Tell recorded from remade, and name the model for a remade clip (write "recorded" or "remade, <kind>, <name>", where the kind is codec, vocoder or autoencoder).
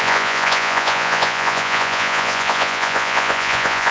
remade, vocoder, Vocos